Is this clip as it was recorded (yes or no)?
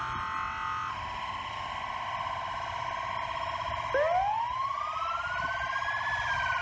yes